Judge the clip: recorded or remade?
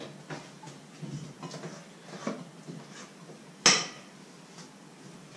recorded